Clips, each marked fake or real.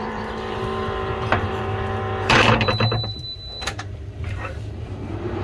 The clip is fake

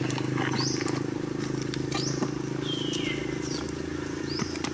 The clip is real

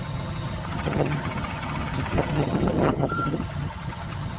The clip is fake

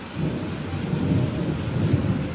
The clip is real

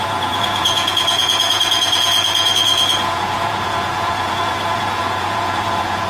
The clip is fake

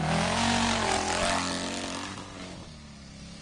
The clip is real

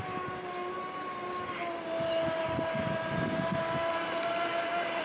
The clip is real